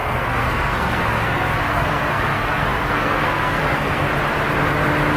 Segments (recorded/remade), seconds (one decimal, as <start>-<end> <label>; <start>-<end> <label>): 0.0-4.1 remade; 4.1-5.2 recorded